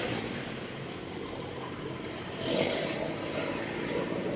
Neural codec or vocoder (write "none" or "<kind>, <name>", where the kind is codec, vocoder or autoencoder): vocoder, BigVGAN v2